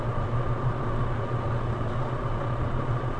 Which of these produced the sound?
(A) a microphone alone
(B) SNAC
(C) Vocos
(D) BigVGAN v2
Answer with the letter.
C